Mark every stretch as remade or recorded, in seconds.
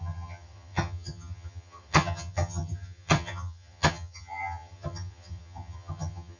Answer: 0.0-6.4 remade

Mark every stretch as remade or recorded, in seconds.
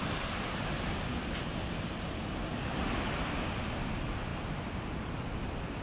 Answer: 0.0-5.8 recorded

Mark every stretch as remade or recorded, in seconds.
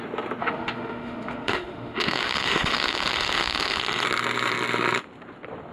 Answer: 0.0-0.4 recorded; 0.4-3.8 remade; 3.8-5.7 recorded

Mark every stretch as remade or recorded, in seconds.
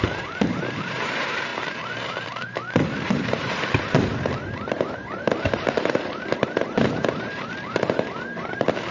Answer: 0.0-8.9 remade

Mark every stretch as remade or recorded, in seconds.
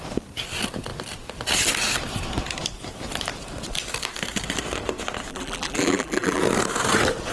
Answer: 0.0-5.3 recorded; 5.3-6.4 remade; 6.4-7.3 recorded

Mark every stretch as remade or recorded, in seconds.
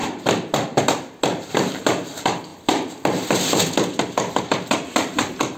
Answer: 0.0-1.7 recorded; 1.7-2.5 remade; 2.5-4.4 recorded; 4.4-5.6 remade